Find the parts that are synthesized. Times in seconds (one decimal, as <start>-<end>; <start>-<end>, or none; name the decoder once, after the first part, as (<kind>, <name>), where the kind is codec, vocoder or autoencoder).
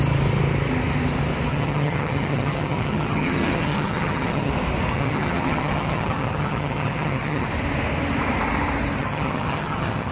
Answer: 1.5-4.5 (vocoder, HiFi-GAN); 4.9-7.5; 9.0-10.1